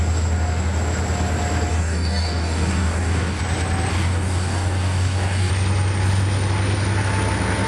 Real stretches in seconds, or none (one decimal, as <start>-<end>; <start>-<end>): 0.0-1.7; 3.4-3.9; 5.5-7.7